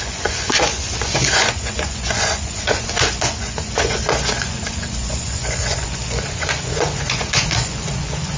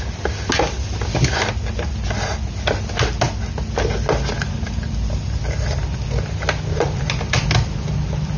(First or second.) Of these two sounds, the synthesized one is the first